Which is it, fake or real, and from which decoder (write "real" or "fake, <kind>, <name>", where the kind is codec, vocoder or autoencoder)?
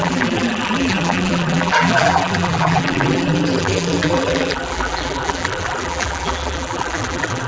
fake, vocoder, BigVGAN v2